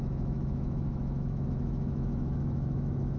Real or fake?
fake